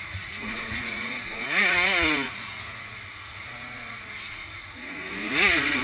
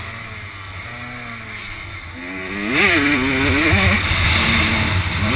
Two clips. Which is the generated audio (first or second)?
first